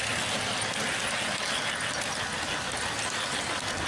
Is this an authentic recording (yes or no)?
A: yes